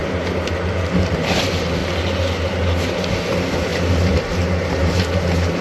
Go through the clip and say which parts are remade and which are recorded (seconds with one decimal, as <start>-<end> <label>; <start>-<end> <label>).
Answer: 0.0-1.4 recorded; 1.4-1.8 remade; 1.8-3.1 recorded; 3.1-5.6 remade